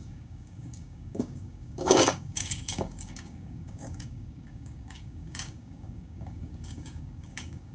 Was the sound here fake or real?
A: fake